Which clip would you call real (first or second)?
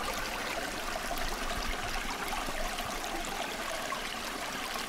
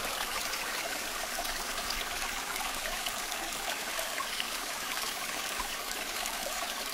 first